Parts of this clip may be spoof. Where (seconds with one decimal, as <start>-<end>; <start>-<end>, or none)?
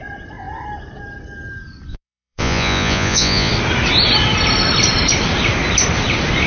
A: 1.9-3.5